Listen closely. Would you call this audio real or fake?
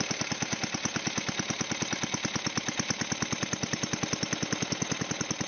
real